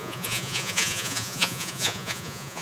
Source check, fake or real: fake